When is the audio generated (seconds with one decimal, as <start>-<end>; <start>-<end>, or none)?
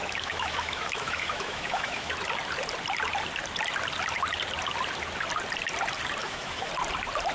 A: 0.0-2.1; 6.2-6.7